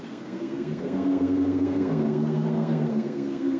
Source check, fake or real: fake